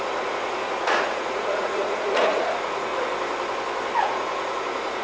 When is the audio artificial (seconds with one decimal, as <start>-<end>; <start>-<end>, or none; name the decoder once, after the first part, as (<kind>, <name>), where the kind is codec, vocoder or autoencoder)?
0.0-2.9 (vocoder, Vocos); 4.0-5.0